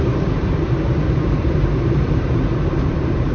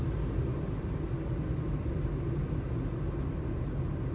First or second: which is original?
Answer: second